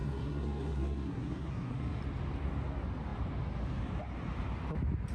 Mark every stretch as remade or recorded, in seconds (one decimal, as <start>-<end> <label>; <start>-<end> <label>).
0.0-2.0 remade; 2.0-5.1 recorded